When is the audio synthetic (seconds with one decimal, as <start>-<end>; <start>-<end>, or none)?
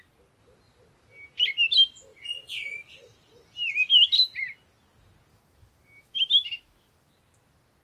5.3-7.1